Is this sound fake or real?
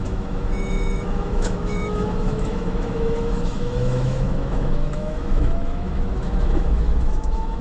fake